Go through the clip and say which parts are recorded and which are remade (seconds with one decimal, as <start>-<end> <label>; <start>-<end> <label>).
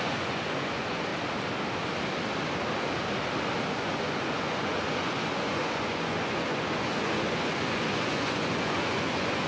0.0-1.1 remade; 1.1-3.7 recorded; 3.7-9.5 remade